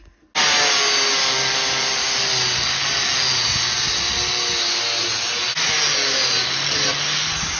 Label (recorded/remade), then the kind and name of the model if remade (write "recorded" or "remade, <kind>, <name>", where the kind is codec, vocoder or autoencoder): recorded